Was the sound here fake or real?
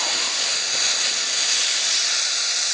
real